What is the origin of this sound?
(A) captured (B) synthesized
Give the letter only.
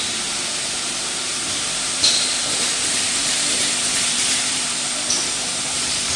B